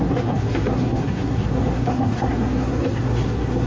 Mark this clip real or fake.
fake